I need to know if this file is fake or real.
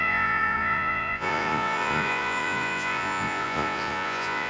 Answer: fake